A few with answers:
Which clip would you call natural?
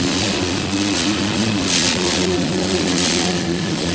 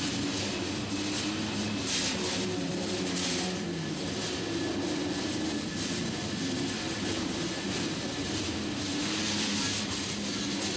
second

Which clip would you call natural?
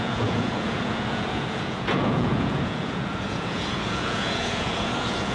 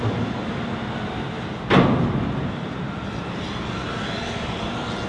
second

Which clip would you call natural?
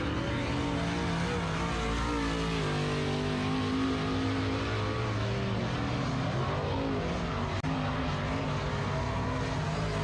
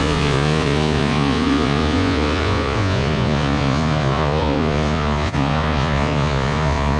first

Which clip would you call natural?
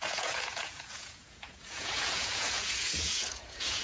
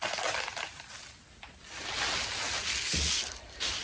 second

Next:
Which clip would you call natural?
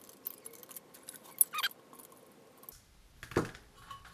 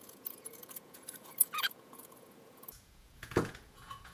first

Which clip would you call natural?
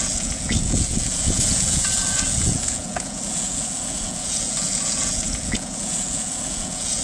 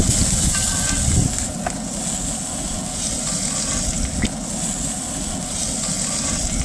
second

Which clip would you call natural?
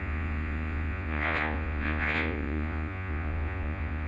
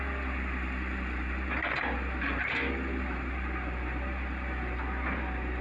second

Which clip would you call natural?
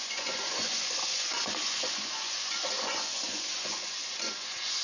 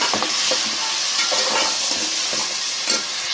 second